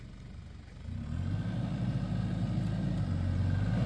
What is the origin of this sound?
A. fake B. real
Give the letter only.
B